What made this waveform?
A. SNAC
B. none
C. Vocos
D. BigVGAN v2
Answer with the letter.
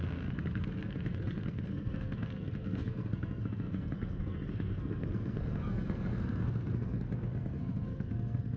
A